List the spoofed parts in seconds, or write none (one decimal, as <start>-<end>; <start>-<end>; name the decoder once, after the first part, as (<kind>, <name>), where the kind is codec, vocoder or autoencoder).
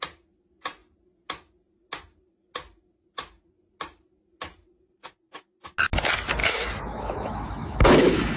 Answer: 6.4-8.4 (autoencoder, DAC-VAE)